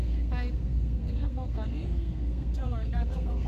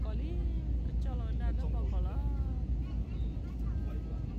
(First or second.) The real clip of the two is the second